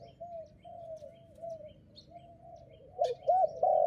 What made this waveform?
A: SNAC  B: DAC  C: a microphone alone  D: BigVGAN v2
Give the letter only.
C